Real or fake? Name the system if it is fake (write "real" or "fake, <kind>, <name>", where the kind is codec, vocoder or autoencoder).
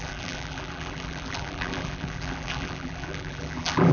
fake, vocoder, BigVGAN v2